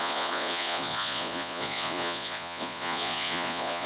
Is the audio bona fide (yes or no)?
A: no